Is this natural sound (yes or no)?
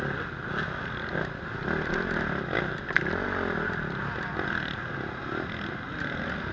yes